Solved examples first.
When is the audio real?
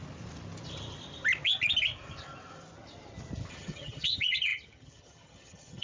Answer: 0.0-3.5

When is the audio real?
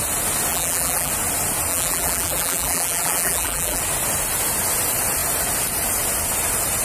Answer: 0.0-0.5; 1.1-1.7; 3.8-6.8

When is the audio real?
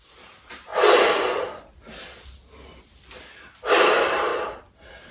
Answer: 0.7-3.8; 4.3-5.1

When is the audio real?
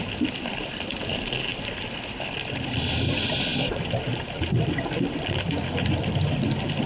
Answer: none